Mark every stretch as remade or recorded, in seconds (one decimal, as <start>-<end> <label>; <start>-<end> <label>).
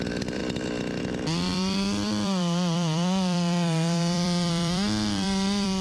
0.0-0.4 remade; 0.4-1.0 recorded; 1.0-5.8 remade